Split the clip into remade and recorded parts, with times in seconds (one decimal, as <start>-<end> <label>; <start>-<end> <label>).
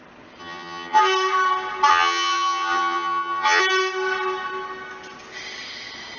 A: 0.0-0.4 recorded; 0.4-1.0 remade; 1.0-1.9 recorded; 1.9-3.6 remade; 3.6-6.2 recorded